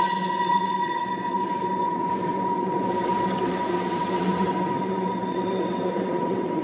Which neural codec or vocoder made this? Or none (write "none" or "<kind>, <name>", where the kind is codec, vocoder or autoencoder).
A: vocoder, WaveNeXt